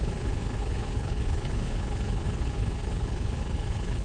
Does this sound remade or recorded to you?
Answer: remade